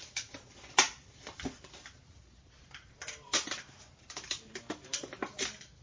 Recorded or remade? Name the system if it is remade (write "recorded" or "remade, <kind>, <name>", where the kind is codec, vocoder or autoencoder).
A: recorded